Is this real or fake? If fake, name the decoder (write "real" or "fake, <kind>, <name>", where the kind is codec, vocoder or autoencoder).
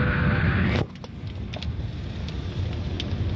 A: real